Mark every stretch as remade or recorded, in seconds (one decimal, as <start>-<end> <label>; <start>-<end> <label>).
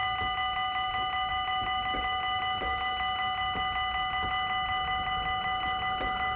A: 0.0-6.4 recorded